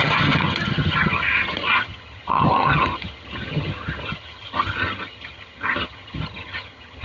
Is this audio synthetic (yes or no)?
yes